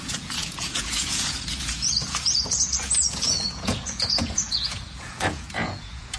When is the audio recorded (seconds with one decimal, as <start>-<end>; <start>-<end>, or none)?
none